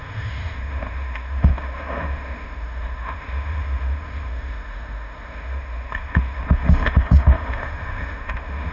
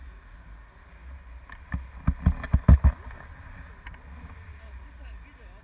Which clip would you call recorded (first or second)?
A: second